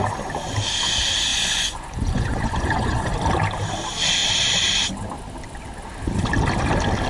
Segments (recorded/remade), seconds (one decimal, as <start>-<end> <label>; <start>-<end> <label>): 0.0-1.3 recorded; 1.3-3.1 remade; 3.1-7.1 recorded